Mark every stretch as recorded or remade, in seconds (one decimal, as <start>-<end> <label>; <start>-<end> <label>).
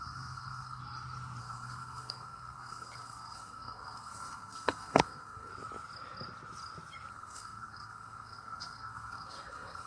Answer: 0.0-0.8 remade; 0.8-1.4 recorded; 1.4-5.5 remade; 5.5-7.1 recorded; 7.1-9.9 remade